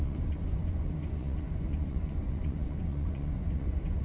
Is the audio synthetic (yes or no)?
yes